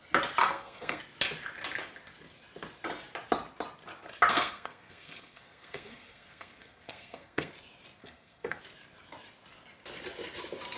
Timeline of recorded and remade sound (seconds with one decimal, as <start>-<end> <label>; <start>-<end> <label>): 0.0-0.4 recorded; 0.4-1.0 remade; 1.0-4.3 recorded; 4.3-7.5 remade; 7.5-8.0 recorded; 8.0-8.6 remade; 8.6-10.8 recorded